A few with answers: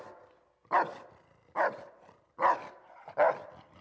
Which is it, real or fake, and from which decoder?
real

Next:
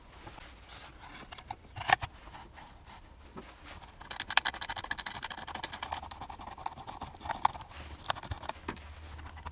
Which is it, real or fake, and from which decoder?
real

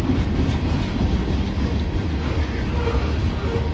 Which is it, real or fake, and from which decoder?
real